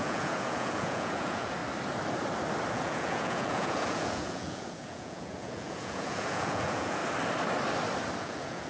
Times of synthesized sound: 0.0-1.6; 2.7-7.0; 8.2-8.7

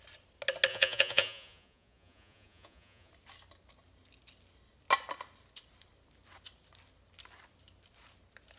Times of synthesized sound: 0.7-3.1

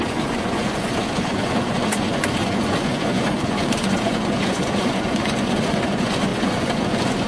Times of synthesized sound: 0.0-7.3

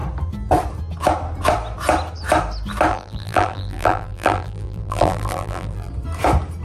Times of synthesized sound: 2.9-5.9

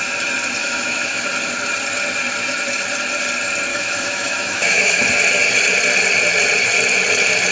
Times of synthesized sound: 0.6-1.3; 3.7-5.0

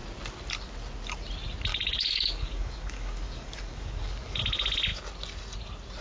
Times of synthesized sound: 1.7-4.4